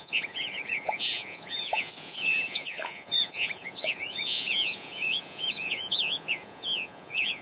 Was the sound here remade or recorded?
remade